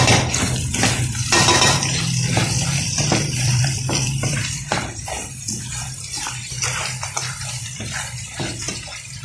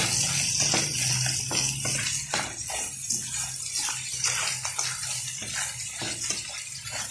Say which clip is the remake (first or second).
first